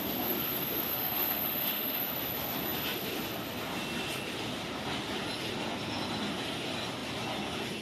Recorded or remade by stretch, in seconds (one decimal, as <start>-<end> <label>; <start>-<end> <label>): 0.0-0.9 recorded; 0.9-2.0 remade; 2.0-7.8 recorded

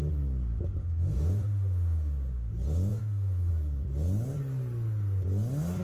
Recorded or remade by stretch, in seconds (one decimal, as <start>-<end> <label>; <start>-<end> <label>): 0.0-0.8 recorded; 0.8-2.5 remade; 2.5-2.9 recorded; 2.9-3.5 remade; 3.5-5.8 recorded

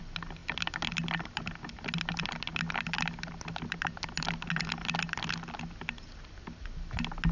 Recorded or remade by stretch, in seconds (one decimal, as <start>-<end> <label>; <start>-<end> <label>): 0.0-7.3 recorded

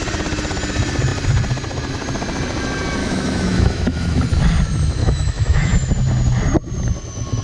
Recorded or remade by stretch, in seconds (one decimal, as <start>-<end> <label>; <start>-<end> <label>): 0.0-3.0 recorded; 3.0-4.2 remade; 4.2-5.0 recorded; 5.0-5.9 remade; 5.9-7.4 recorded